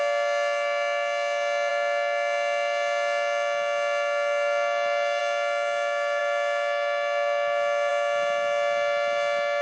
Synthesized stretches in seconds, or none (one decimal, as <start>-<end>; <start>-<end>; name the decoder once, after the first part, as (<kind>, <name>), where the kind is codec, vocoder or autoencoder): none